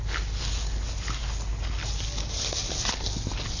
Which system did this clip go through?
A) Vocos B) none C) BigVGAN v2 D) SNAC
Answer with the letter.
B